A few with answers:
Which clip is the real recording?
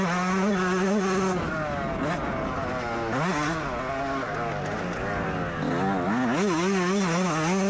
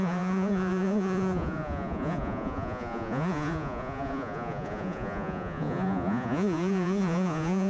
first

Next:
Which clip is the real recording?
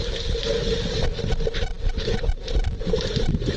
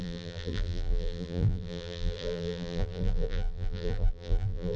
first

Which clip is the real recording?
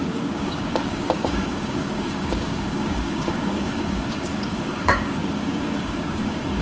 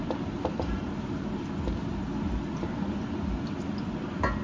second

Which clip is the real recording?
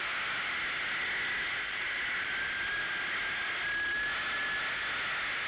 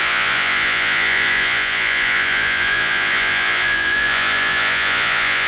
first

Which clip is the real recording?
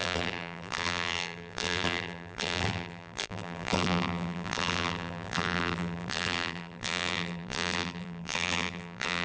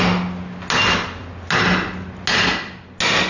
second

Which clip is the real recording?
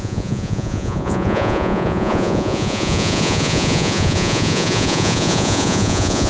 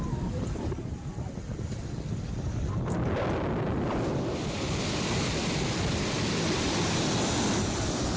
second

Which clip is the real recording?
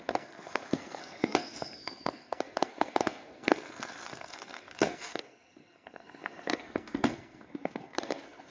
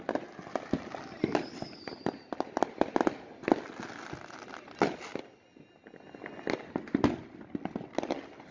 second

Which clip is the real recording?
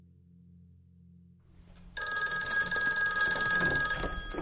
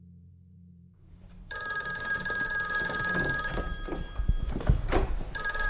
first